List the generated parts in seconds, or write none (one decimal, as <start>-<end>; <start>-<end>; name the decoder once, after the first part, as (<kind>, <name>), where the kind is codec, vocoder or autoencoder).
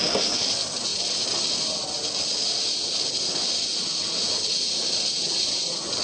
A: none